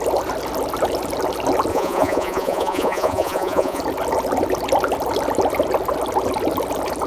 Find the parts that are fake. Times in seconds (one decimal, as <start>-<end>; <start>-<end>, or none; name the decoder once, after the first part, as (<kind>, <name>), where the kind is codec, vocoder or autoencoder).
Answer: 1.7-3.8 (vocoder, Vocos)

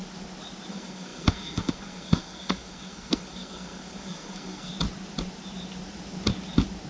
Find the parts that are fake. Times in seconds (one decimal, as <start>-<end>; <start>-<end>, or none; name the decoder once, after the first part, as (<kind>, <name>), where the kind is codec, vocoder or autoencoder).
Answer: 0.7-4.7 (codec, SNAC)